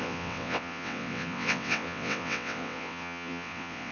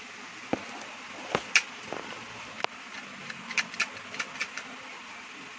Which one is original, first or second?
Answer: second